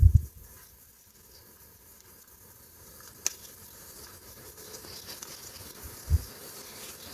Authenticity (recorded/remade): recorded